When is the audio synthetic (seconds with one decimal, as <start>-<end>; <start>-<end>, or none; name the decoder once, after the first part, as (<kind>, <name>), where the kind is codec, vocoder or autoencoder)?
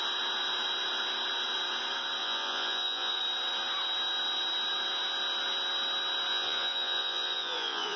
2.2-3.2 (vocoder, Vocos); 6.3-8.0